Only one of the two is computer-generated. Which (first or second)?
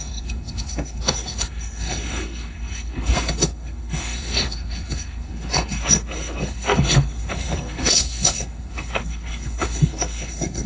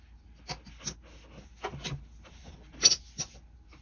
first